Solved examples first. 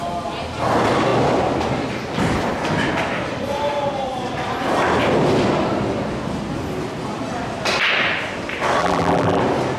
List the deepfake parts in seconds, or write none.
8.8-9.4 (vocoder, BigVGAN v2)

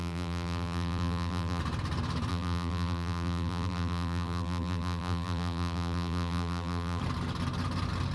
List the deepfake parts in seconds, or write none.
0.0-1.6 (vocoder, BigVGAN v2); 2.3-7.0

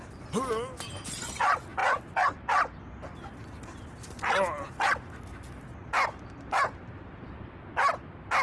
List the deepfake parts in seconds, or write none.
none

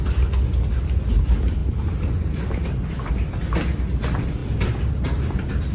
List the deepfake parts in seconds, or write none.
none

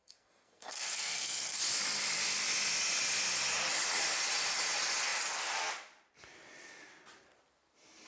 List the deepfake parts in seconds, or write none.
0.0-1.6 (codec, SNAC)

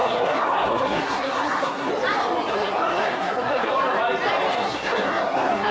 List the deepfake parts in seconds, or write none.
0.0-1.9 (codec, SNAC); 2.5-3.7; 4.5-5.7

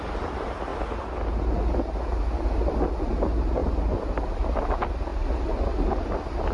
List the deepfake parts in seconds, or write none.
none

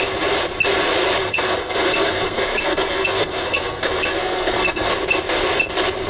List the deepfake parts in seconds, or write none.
1.2-4.9 (codec, SNAC)